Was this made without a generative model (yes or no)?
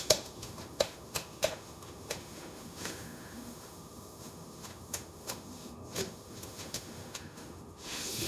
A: no